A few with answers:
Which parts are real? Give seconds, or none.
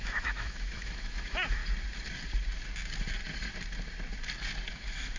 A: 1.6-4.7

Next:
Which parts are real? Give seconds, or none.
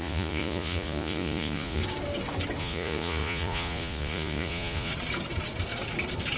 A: 1.8-2.6; 4.9-6.4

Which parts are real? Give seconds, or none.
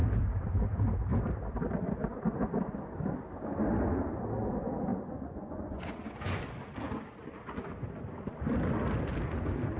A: 0.0-4.9; 6.4-9.8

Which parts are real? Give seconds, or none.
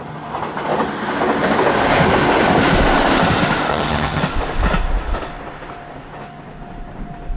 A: 0.0-3.7; 4.2-7.4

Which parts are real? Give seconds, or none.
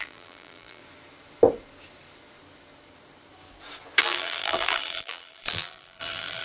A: 0.8-4.0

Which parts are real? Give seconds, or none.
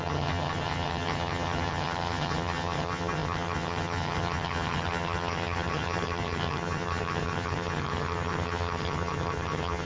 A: none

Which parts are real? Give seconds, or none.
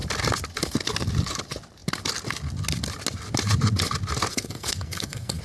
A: 0.0-4.3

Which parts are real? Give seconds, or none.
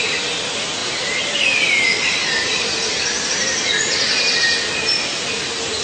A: 0.0-0.8; 4.3-5.8